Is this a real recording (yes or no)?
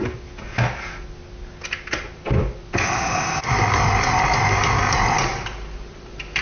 yes